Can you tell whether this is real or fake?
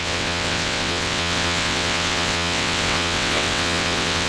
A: fake